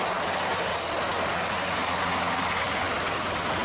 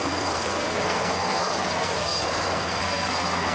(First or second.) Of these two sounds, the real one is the first